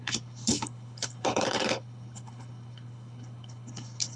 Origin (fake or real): fake